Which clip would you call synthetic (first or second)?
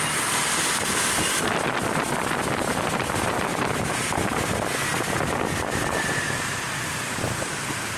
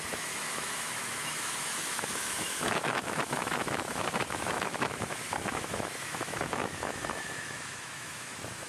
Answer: second